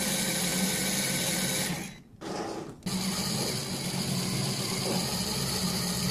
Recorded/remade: recorded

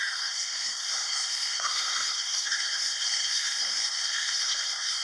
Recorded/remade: remade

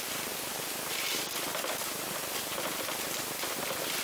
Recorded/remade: recorded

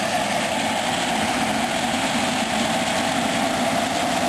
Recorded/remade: recorded